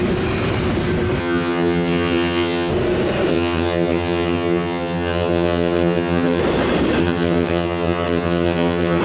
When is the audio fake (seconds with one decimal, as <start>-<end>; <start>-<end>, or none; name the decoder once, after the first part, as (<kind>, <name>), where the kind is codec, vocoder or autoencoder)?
1.2-2.7 (vocoder, HiFi-GAN); 3.3-6.4; 7.0-9.0